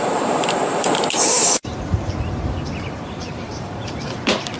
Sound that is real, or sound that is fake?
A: fake